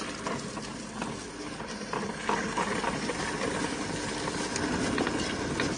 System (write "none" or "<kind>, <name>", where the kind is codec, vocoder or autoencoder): none